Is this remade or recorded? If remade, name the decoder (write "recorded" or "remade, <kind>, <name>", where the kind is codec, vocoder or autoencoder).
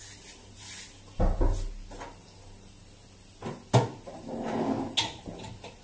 recorded